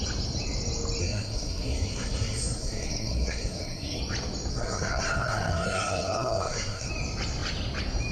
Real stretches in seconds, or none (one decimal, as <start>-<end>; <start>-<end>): 0.0-1.0; 4.0-4.5; 6.9-8.1